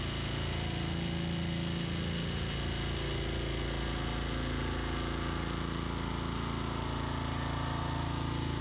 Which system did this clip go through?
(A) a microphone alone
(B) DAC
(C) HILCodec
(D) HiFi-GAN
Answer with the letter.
A